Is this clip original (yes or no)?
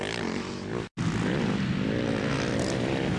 yes